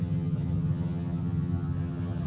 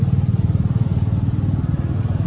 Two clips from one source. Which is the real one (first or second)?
second